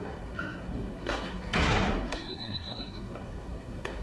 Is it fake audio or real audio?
fake